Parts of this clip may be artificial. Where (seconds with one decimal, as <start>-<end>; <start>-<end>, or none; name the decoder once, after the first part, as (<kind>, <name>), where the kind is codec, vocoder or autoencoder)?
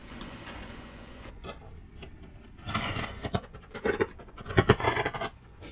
0.0-1.6 (vocoder, Vocos); 2.8-5.7